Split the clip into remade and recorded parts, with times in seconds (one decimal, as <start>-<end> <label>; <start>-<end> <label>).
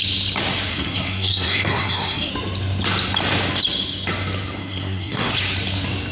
0.0-0.7 recorded; 0.7-2.3 remade; 2.3-4.6 recorded; 4.6-5.3 remade; 5.3-6.1 recorded